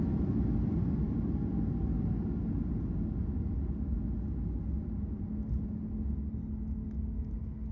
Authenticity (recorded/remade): recorded